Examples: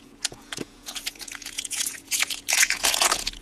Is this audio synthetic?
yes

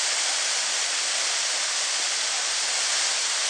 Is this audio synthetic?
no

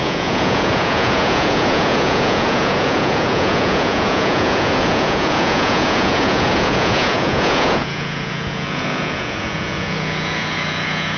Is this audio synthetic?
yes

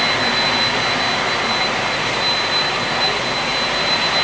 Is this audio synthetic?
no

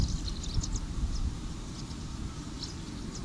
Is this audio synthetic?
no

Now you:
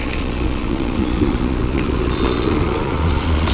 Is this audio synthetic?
yes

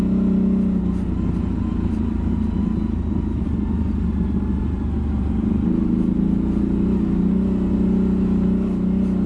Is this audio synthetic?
no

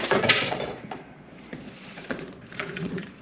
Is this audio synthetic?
yes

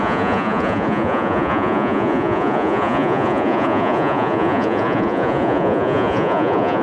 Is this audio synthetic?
yes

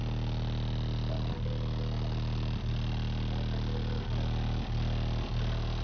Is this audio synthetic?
no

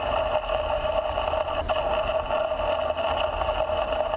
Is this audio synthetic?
no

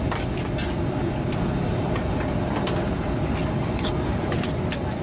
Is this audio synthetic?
no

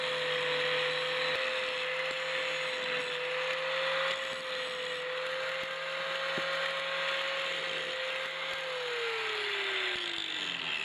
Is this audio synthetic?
no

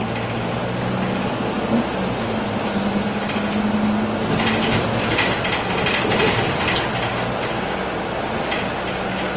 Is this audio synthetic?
no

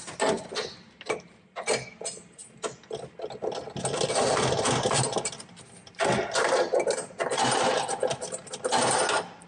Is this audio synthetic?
no